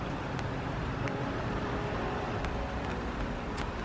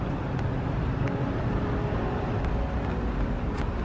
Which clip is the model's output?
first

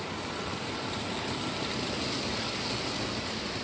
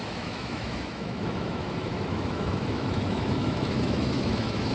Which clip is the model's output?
second